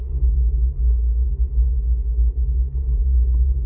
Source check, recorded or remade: recorded